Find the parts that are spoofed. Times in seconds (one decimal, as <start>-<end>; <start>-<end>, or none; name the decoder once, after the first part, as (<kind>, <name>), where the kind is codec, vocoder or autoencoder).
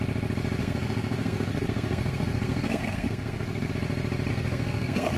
0.6-3.7 (codec, SNAC); 4.3-5.2